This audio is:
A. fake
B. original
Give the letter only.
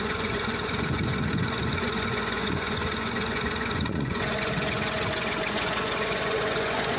A